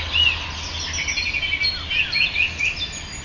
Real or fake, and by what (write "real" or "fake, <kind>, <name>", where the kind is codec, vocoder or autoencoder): real